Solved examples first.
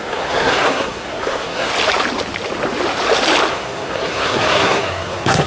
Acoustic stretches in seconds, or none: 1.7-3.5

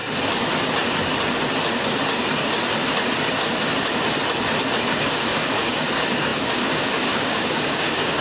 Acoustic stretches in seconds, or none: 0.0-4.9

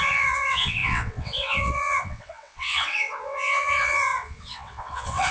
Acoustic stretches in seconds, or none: none